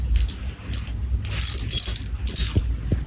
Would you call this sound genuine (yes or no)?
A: yes